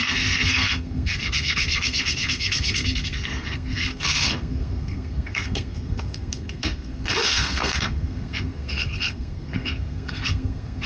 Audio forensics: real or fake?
fake